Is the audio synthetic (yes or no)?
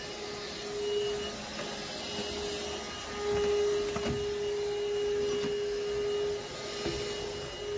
no